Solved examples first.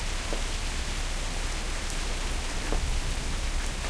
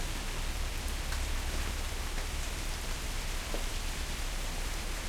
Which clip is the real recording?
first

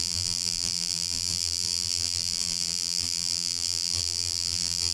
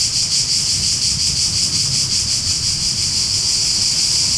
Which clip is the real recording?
second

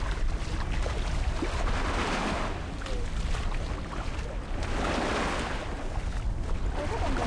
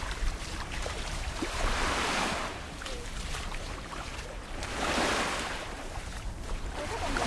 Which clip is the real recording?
first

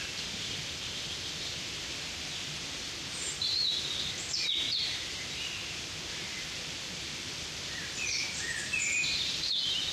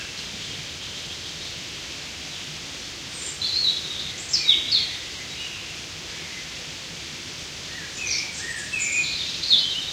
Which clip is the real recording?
second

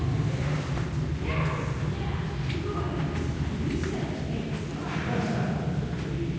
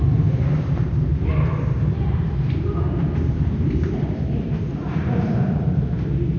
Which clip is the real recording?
first